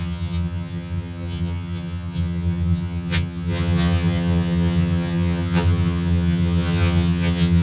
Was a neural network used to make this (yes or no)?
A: yes